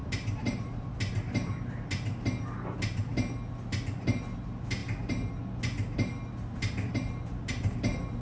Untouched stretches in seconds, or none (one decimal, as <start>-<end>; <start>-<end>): 0.9-8.2